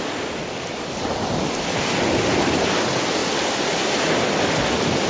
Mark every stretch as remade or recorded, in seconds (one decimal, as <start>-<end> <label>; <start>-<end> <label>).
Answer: 0.0-5.1 recorded